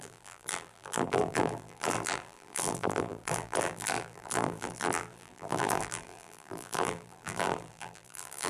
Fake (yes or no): yes